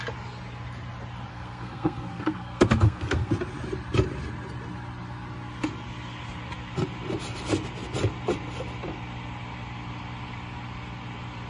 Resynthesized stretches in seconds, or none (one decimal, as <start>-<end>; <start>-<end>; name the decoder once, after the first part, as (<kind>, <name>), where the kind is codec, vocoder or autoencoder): 1.3-3.3 (codec, SNAC)